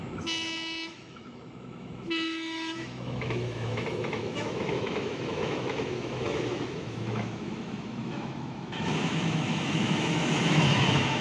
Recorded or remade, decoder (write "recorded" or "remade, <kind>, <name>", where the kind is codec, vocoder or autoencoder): remade, autoencoder, DAC-VAE